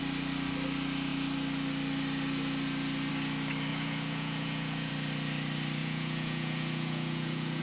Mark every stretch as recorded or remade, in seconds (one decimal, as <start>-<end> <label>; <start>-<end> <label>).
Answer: 0.0-3.7 recorded; 3.7-4.9 remade; 4.9-5.8 recorded; 5.8-7.6 remade